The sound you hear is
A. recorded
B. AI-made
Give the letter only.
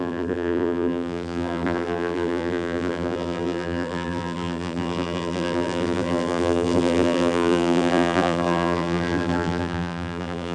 B